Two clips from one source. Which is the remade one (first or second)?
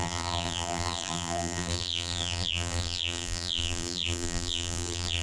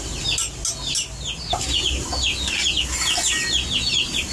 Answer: first